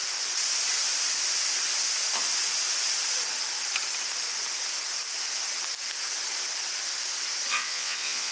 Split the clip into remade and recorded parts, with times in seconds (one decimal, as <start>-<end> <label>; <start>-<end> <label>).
0.0-7.5 recorded; 7.5-8.3 remade